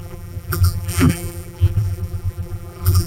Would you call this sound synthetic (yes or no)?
yes